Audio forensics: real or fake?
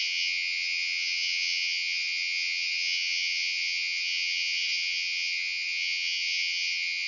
fake